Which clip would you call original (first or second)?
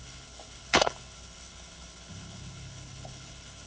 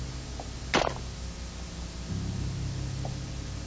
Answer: second